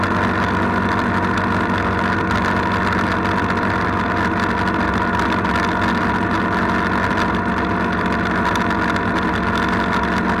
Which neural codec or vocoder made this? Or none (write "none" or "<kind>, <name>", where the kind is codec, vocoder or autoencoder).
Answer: none